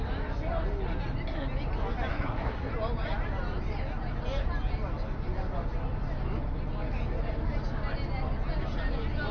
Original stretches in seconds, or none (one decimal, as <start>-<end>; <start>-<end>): 0.0-2.1; 2.7-9.3